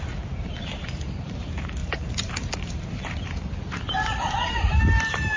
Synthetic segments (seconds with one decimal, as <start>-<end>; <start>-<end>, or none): 0.0-5.4

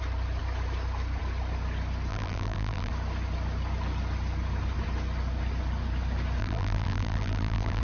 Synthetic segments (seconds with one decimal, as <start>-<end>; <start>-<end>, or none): 2.1-2.9; 6.4-7.8

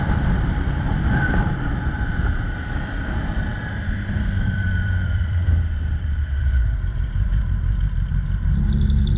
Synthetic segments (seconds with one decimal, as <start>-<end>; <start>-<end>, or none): 3.5-7.9

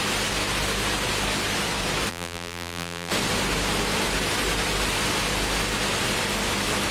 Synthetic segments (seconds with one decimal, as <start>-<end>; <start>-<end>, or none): 2.1-3.1

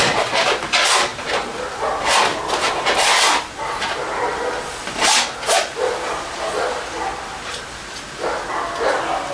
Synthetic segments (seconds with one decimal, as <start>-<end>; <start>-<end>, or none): 1.1-1.9

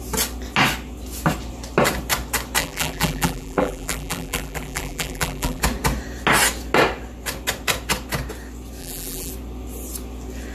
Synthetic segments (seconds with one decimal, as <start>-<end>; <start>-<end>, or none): 2.6-5.6; 8.8-9.3

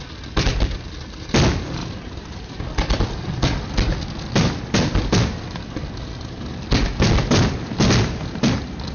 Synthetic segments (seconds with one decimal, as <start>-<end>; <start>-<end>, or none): 1.8-2.6